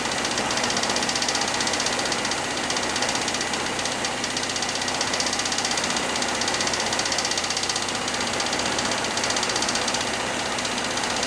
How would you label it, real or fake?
real